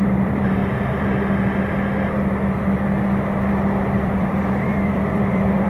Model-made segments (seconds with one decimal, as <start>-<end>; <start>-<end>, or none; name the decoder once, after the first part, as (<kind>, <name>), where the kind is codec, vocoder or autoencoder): 0.0-0.6 (vocoder, BigVGAN v2); 4.0-5.7